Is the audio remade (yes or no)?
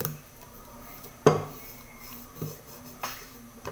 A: yes